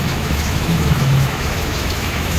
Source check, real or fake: fake